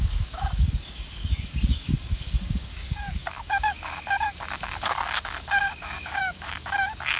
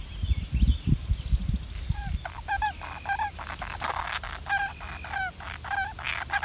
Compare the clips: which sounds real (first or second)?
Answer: second